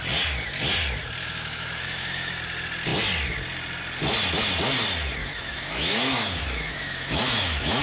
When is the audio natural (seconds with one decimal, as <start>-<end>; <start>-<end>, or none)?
0.0-1.2; 2.4-5.2